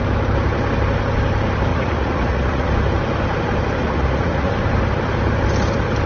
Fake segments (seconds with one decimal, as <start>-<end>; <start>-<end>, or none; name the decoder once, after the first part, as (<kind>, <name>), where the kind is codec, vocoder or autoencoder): 1.7-2.7 (vocoder, Vocos); 3.8-4.5